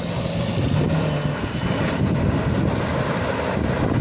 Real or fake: real